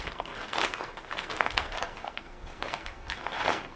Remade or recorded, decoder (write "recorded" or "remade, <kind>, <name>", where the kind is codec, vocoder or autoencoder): remade, codec, SNAC